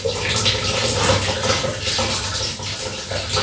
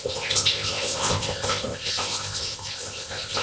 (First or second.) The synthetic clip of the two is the second